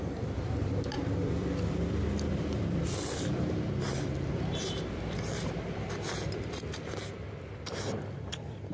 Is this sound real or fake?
fake